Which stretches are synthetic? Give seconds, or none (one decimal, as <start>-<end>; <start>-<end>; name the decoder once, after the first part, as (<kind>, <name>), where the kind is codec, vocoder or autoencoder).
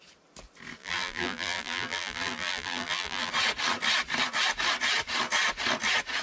0.8-3.3 (vocoder, BigVGAN v2)